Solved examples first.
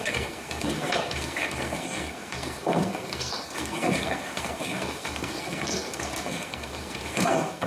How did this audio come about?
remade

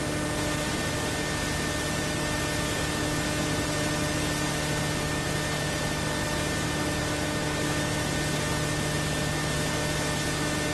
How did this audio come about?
recorded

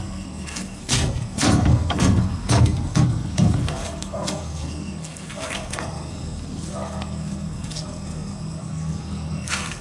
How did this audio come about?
remade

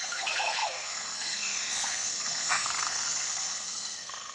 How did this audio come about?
remade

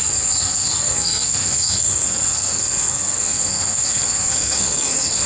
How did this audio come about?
remade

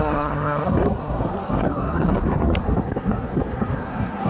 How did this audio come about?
remade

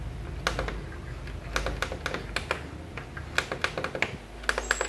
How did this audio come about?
recorded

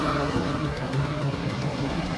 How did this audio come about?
remade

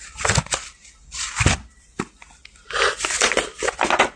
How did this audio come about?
recorded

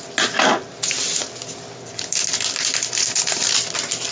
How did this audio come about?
recorded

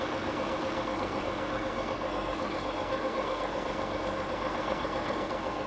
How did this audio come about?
remade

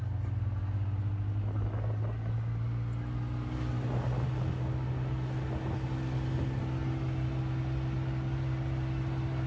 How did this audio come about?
recorded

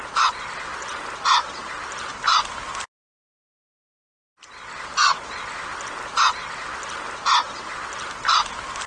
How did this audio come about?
recorded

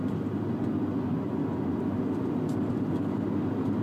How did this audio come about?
recorded